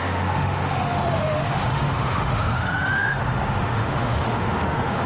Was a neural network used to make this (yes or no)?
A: yes